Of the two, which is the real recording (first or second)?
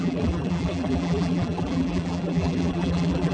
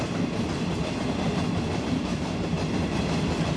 second